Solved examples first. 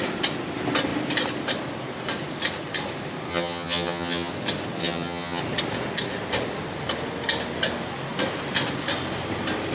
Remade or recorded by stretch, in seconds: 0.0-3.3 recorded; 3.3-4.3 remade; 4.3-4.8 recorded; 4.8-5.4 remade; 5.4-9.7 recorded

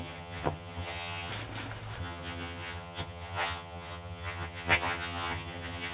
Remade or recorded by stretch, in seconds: 0.0-1.3 remade; 1.3-2.0 recorded; 2.0-5.9 remade

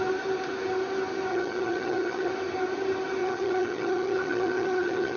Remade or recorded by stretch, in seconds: 0.0-1.3 recorded; 1.3-2.3 remade; 2.3-3.2 recorded; 3.2-5.2 remade